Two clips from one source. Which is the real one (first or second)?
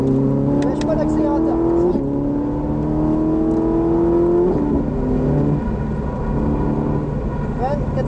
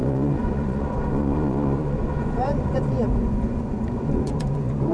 first